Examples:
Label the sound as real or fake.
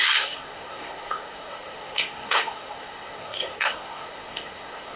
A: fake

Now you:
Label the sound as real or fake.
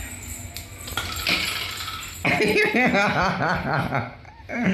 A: real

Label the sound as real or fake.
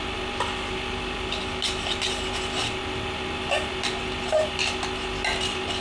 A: real